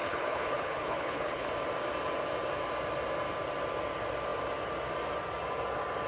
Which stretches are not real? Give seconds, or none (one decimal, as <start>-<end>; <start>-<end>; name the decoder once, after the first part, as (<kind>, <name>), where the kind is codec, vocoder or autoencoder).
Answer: 0.0-1.5 (codec, HILCodec)